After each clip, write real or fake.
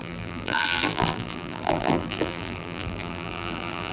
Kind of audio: fake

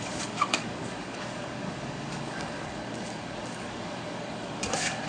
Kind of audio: fake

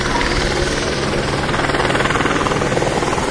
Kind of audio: real